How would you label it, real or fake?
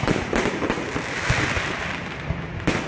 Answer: real